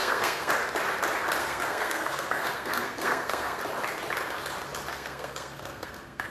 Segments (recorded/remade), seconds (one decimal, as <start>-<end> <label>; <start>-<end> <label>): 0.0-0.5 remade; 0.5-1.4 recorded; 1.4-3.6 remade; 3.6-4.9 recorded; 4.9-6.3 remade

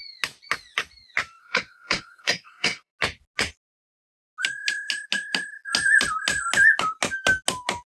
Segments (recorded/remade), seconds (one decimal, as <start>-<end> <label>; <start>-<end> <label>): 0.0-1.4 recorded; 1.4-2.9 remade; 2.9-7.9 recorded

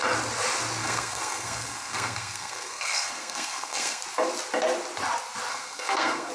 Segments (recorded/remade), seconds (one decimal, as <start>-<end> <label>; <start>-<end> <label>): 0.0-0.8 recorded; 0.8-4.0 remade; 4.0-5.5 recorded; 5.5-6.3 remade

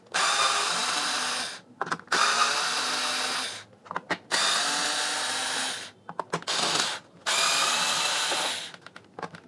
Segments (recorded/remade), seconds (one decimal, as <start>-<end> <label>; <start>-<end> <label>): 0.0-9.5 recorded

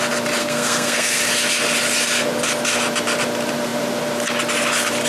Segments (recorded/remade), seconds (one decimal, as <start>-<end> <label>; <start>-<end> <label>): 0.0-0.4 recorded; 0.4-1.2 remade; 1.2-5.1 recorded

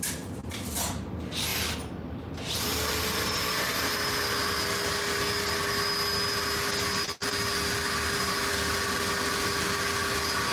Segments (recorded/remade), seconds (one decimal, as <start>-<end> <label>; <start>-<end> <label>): 0.0-10.5 recorded

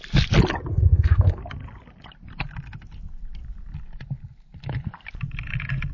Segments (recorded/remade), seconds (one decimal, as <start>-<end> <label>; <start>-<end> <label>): 0.0-0.7 recorded; 0.7-1.4 remade; 1.4-5.9 recorded

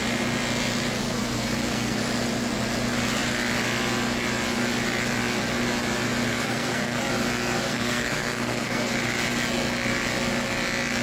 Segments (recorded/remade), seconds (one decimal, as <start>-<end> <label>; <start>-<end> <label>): 0.0-1.0 recorded; 1.0-2.0 remade; 2.0-6.3 recorded; 6.3-7.1 remade; 7.1-7.7 recorded; 7.7-8.9 remade; 8.9-11.0 recorded